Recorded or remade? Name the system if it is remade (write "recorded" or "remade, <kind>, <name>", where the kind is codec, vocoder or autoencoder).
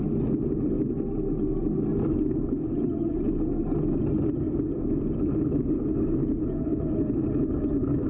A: recorded